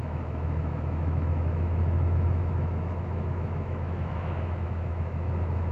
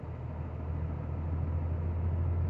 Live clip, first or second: second